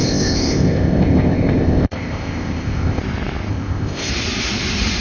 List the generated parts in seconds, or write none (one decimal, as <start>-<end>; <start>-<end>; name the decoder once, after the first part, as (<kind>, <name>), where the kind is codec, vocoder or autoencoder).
0.0-3.0 (codec, ZipCodec); 3.5-4.1